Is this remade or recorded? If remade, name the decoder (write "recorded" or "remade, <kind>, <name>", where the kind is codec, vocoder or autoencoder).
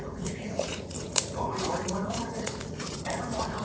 remade, vocoder, Vocos